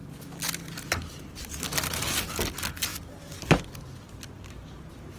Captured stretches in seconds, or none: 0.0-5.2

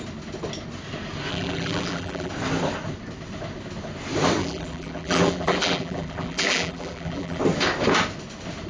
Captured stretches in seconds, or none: 0.0-1.3; 2.3-4.4; 7.4-8.7